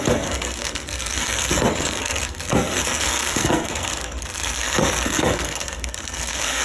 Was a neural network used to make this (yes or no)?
yes